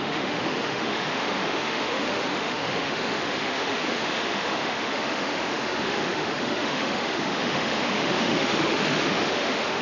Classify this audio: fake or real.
fake